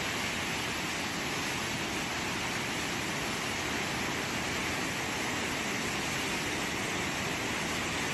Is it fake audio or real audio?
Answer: real